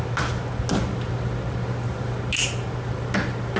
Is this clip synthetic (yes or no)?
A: no